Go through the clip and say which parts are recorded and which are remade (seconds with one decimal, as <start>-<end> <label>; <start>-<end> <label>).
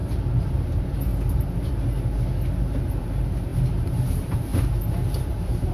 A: 0.0-1.1 remade; 1.1-2.9 recorded; 2.9-4.5 remade; 4.5-5.2 recorded; 5.2-5.7 remade